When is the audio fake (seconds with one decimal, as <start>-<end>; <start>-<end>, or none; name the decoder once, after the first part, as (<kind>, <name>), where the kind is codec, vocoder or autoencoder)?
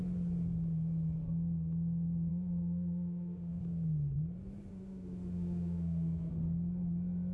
2.3-3.6 (autoencoder, DAC-VAE); 4.7-6.3